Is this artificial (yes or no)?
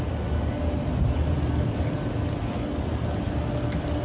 no